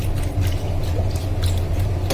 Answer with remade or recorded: recorded